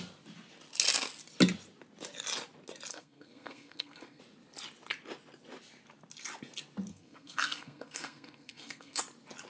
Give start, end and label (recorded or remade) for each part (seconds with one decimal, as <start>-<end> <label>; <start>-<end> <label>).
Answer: 0.0-2.9 recorded; 2.9-4.2 remade; 4.2-6.9 recorded; 6.9-9.0 remade; 9.0-9.5 recorded